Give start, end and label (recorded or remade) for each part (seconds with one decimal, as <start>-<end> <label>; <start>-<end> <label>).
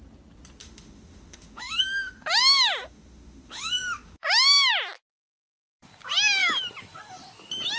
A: 0.0-0.6 recorded; 0.6-4.7 remade; 4.7-7.8 recorded